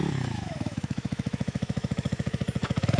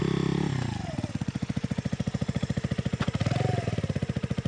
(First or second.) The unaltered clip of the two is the second